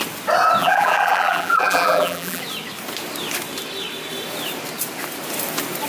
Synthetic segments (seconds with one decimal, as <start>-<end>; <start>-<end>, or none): 0.6-2.4